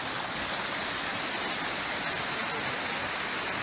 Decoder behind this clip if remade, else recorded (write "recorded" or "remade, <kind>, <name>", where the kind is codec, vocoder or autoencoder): recorded